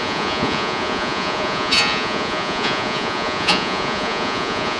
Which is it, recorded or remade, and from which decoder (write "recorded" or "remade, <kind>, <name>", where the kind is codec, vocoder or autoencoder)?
remade, vocoder, Vocos